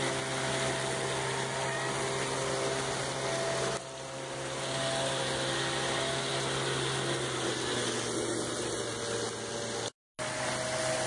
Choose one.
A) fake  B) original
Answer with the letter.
B